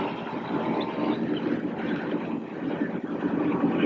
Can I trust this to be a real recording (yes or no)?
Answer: yes